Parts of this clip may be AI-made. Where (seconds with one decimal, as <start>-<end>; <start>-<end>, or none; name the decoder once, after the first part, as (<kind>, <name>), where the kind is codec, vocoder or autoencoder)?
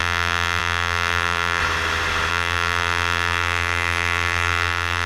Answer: 0.0-1.6 (vocoder, BigVGAN v2); 2.3-5.1